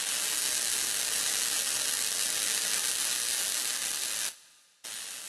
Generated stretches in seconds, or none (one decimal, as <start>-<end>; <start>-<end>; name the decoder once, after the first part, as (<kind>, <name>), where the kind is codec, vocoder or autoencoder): none